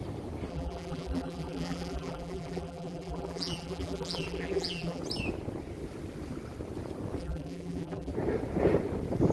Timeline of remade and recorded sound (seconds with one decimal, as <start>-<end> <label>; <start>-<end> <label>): 0.0-0.5 recorded; 0.5-5.0 remade; 5.0-7.2 recorded; 7.2-8.1 remade; 8.1-9.3 recorded